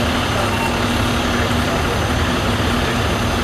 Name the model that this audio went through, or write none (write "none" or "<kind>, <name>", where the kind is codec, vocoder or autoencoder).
none